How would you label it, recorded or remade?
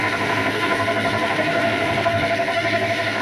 remade